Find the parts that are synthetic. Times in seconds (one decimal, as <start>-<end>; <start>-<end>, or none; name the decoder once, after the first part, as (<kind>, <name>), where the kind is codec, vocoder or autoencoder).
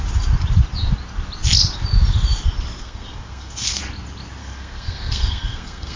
2.8-3.8 (codec, SNAC); 4.4-6.0